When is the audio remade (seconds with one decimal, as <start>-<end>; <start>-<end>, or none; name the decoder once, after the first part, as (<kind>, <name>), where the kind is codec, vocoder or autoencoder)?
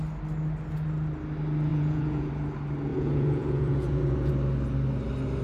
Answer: 1.7-2.3 (vocoder, Vocos); 2.9-4.3